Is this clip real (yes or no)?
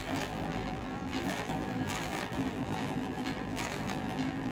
no